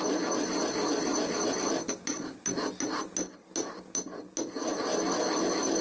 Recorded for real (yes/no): yes